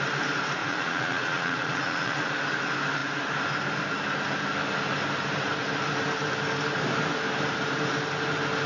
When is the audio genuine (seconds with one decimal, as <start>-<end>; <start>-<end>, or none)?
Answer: 0.0-0.6; 2.3-8.7